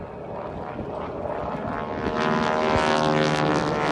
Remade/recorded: recorded